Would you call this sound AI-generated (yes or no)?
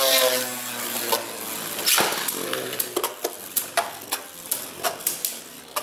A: no